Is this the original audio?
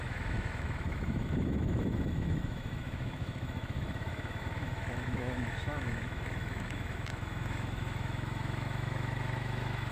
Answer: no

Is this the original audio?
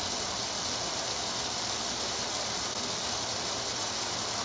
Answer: yes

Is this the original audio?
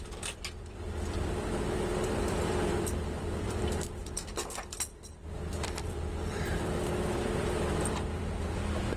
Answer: no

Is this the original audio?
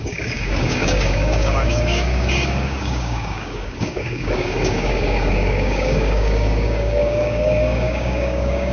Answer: no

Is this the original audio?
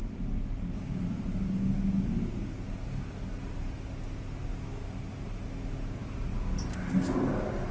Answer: yes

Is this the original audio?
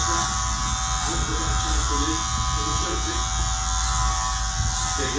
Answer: yes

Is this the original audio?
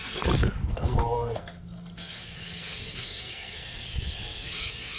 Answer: no